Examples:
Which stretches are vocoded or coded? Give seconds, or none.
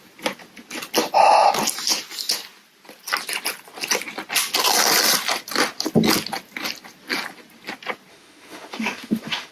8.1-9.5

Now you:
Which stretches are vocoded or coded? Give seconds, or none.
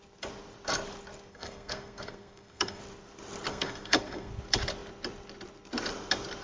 1.3-2.8; 3.5-4.3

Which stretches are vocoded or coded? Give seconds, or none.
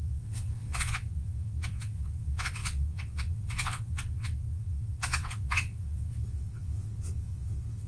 0.0-7.9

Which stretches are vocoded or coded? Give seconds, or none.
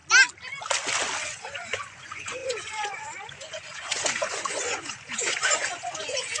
1.2-6.4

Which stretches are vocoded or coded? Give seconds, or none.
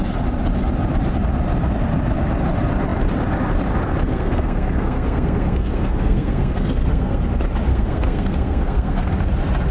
4.1-7.2; 7.7-9.1